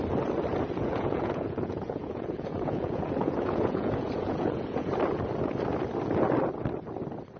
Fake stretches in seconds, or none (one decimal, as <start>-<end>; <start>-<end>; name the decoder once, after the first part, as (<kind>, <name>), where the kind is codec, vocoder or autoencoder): 0.5-4.9 (vocoder, Vocos)